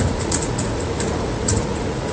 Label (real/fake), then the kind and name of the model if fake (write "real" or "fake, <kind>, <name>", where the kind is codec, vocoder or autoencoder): fake, vocoder, Vocos